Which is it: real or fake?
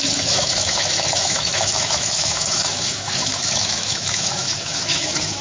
fake